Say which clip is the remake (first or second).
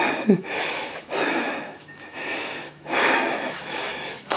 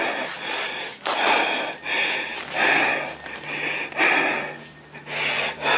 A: first